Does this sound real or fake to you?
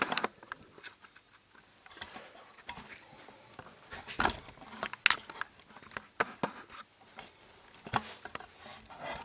real